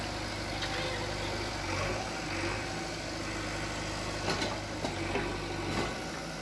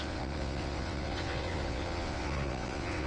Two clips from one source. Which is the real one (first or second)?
first